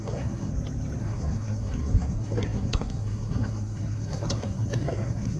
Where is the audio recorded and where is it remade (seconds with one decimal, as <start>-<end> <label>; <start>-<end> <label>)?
0.0-0.5 remade; 0.5-1.0 recorded; 1.0-5.4 remade